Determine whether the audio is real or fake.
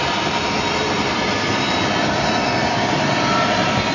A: fake